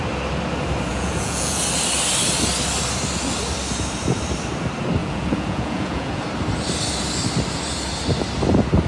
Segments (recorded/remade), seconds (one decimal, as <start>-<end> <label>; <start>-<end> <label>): 0.0-0.9 recorded; 0.9-1.6 remade; 1.6-5.0 recorded; 5.0-6.2 remade; 6.2-8.9 recorded